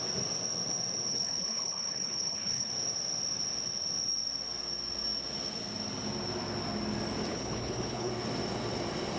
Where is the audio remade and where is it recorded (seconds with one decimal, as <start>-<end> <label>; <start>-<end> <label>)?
0.0-1.1 recorded; 1.1-2.7 remade; 2.7-7.3 recorded; 7.3-8.1 remade; 8.1-9.2 recorded